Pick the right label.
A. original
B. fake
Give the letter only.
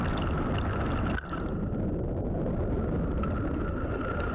A